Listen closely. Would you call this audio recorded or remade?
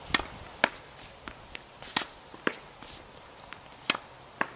recorded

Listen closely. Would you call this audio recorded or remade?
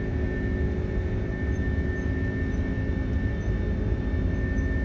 recorded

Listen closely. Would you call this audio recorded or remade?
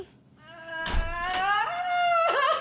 recorded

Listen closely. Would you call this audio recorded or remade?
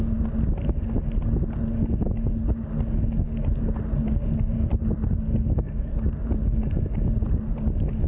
recorded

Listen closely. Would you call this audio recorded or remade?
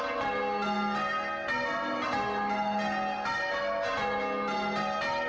recorded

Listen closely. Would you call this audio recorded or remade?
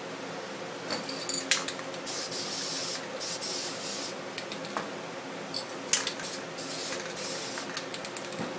recorded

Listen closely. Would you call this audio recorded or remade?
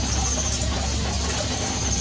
recorded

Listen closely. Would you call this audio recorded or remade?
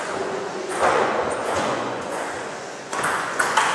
remade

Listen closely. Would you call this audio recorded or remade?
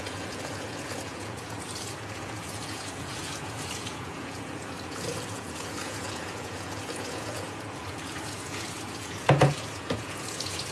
remade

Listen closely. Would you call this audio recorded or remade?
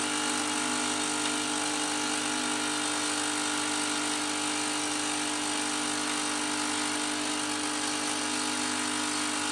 recorded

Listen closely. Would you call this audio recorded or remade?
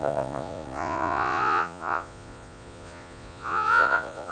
remade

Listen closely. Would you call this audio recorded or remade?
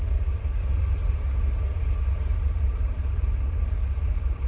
recorded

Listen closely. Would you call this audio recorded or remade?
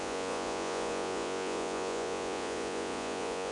remade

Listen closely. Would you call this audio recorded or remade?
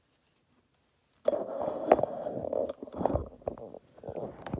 recorded